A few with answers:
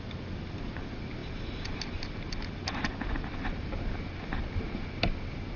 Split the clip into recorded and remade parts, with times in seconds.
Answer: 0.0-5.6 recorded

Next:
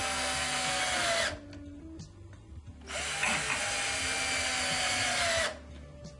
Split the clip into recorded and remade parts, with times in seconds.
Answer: 0.0-0.8 remade; 0.8-6.2 recorded

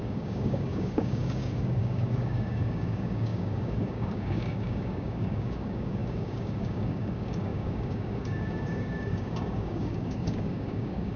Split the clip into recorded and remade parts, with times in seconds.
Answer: 0.0-11.2 remade

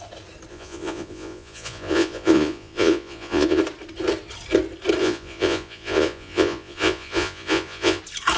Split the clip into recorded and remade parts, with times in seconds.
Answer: 0.0-0.5 recorded; 0.5-3.6 remade; 3.6-5.0 recorded; 5.0-8.0 remade; 8.0-8.4 recorded

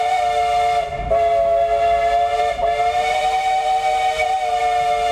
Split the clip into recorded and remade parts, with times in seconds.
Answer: 0.0-2.3 recorded; 2.3-4.6 remade; 4.6-5.1 recorded

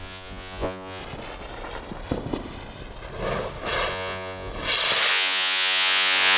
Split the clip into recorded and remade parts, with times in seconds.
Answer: 0.0-1.0 remade; 1.0-3.9 recorded; 3.9-4.5 remade; 4.5-5.1 recorded; 5.1-6.4 remade

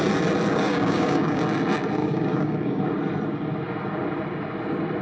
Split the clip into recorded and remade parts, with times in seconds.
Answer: 0.0-0.5 recorded; 0.5-1.4 remade; 1.4-2.0 recorded; 2.0-2.8 remade; 2.8-5.0 recorded

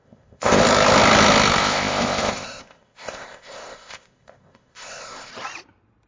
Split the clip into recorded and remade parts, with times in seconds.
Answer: 0.0-0.6 remade; 0.6-1.6 recorded; 1.6-5.3 remade; 5.3-6.1 recorded